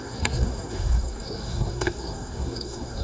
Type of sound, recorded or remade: remade